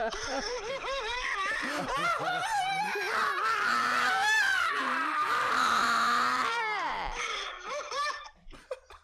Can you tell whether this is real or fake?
fake